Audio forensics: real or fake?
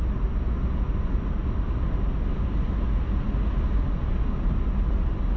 real